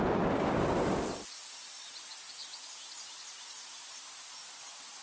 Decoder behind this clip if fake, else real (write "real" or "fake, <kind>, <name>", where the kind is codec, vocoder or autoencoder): real